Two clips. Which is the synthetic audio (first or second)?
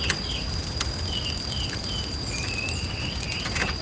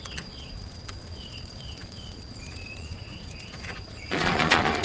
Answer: second